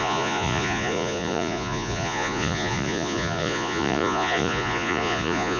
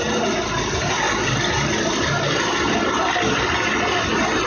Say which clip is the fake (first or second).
first